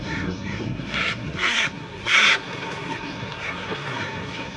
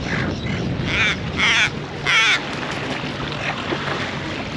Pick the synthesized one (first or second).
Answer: first